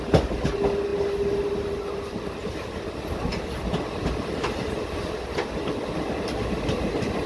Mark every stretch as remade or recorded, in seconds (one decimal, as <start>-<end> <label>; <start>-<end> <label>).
0.0-7.3 recorded